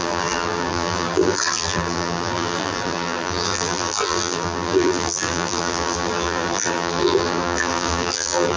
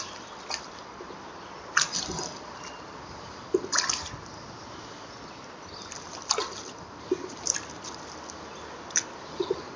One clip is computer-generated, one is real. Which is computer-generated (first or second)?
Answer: first